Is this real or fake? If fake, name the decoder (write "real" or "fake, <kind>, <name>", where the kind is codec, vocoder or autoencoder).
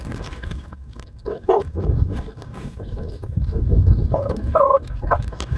fake, codec, DAC